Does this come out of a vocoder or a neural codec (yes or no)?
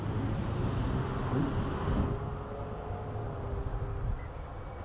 no